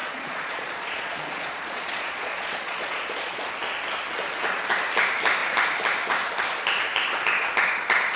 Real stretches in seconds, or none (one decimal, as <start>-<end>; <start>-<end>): 3.5-8.2